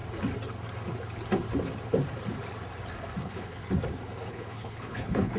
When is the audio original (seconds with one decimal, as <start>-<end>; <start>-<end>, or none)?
0.0-3.2; 3.6-4.3